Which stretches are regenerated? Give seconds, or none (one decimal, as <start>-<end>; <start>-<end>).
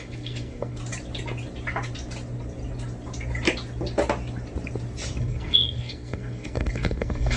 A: 0.0-0.8; 5.2-7.4